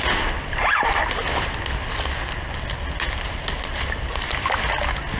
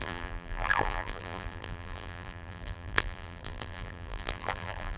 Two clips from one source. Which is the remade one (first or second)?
second